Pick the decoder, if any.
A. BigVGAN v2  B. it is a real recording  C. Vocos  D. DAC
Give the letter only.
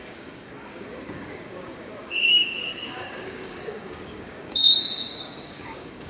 D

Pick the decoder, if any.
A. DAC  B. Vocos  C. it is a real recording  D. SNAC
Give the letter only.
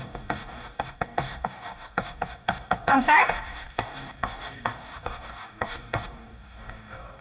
A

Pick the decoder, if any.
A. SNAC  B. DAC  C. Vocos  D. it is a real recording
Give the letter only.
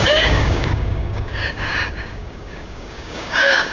B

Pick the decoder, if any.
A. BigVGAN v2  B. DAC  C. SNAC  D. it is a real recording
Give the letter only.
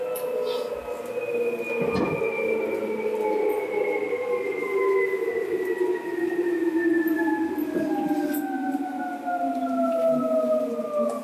D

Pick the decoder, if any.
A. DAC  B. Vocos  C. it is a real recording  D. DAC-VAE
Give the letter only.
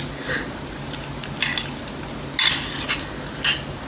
C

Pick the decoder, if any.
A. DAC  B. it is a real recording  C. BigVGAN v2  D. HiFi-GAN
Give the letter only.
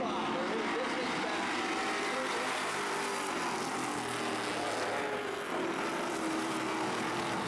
B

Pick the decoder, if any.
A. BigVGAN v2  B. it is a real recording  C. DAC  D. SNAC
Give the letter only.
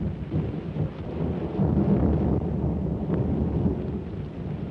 B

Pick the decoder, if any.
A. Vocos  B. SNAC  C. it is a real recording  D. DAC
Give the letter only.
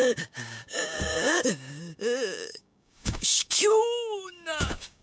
D